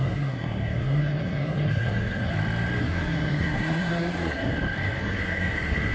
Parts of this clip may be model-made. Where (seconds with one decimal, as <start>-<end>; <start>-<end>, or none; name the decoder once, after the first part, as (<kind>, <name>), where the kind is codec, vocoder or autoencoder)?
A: 0.0-2.3 (codec, SNAC); 2.8-4.5; 5.0-5.9